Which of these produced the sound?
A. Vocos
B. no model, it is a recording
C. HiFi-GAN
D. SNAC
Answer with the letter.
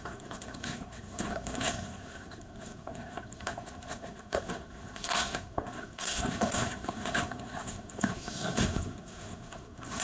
D